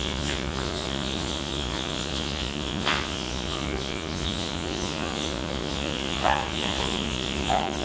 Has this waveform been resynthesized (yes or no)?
yes